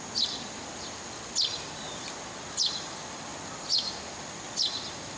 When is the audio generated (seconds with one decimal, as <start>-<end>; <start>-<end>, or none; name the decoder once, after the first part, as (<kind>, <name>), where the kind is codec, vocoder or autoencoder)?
none